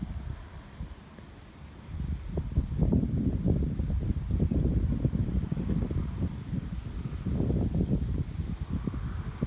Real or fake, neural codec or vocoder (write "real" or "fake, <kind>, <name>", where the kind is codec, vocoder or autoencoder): real